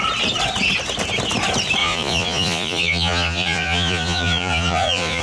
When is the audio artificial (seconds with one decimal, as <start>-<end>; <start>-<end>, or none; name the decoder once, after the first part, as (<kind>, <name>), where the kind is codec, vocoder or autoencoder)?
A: 1.8-5.2 (vocoder, Vocos)